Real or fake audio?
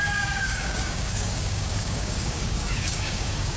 fake